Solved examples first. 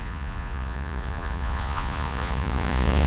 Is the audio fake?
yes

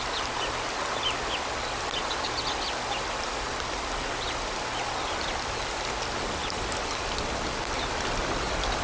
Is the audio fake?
no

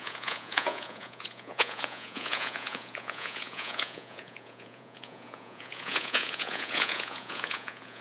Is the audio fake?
yes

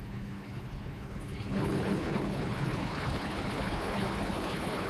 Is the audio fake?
yes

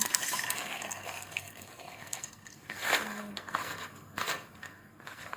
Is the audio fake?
yes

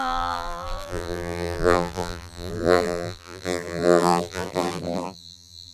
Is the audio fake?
yes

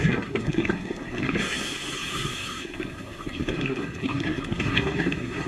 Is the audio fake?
yes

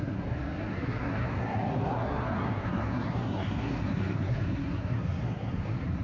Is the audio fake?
yes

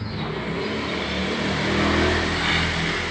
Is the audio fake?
no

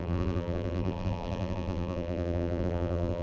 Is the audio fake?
yes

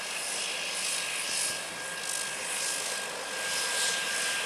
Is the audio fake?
no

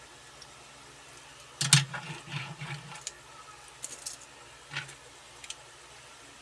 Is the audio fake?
no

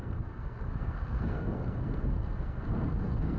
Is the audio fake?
yes